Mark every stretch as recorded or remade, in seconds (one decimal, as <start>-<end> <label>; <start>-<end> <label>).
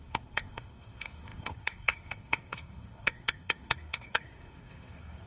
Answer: 0.0-5.3 remade